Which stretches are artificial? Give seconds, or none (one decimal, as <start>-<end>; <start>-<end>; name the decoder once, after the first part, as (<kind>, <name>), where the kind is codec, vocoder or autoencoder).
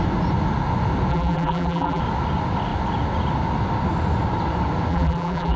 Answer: 1.1-2.0 (vocoder, BigVGAN v2); 4.9-5.6